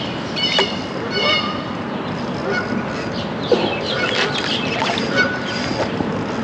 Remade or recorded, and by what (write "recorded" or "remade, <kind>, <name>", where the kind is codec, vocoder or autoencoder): recorded